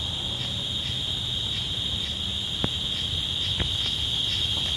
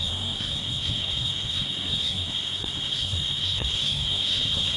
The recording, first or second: first